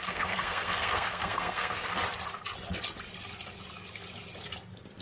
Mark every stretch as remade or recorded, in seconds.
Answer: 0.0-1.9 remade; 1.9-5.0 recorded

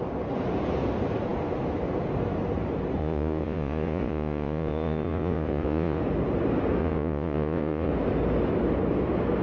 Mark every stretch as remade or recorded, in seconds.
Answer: 0.0-3.0 recorded; 3.0-6.0 remade; 6.0-6.8 recorded; 6.8-7.9 remade; 7.9-9.4 recorded

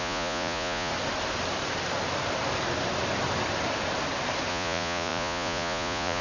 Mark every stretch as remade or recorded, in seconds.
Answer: 0.0-0.9 remade; 0.9-4.5 recorded; 4.5-6.2 remade

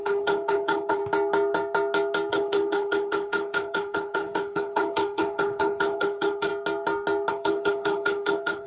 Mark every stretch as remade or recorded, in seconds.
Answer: 0.0-1.0 remade; 1.0-2.3 recorded; 2.3-6.5 remade; 6.5-7.3 recorded; 7.3-8.7 remade

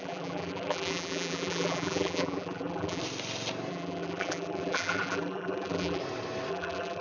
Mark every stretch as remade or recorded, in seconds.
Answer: 0.0-3.0 remade; 3.0-3.7 recorded; 3.7-6.0 remade; 6.0-6.5 recorded; 6.5-7.0 remade

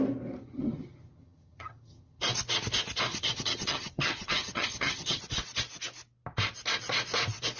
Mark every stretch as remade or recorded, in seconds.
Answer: 0.0-0.4 recorded; 0.4-2.2 remade; 2.2-3.1 recorded; 3.1-5.2 remade; 5.2-7.6 recorded